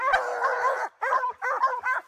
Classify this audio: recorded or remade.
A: recorded